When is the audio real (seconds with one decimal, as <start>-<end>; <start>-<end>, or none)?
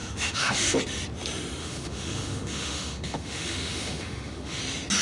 0.8-1.6; 4.6-5.0